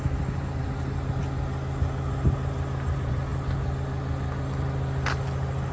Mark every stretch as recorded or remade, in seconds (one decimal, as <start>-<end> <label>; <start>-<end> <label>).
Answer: 0.0-5.7 recorded